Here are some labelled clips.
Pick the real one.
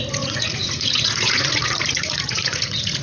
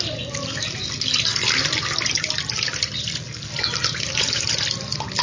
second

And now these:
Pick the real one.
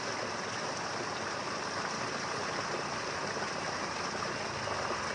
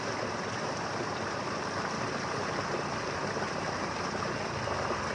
first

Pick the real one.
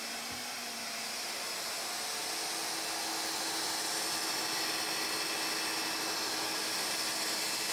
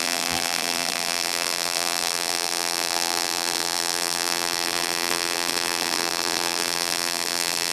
first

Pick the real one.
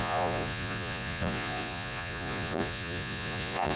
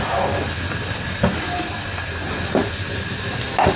second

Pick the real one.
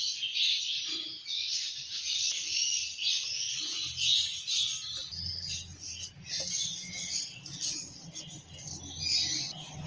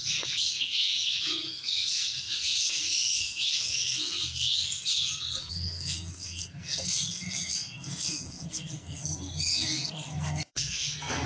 first